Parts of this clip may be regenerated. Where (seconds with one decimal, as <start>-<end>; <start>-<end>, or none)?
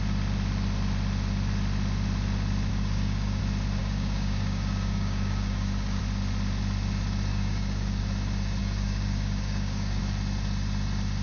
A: 2.7-3.4; 3.8-6.0; 7.3-8.0; 8.6-10.0